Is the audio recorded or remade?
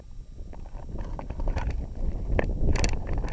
recorded